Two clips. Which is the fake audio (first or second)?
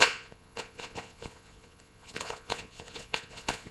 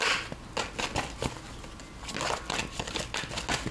first